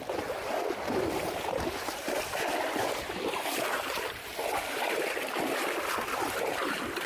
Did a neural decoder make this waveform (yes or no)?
no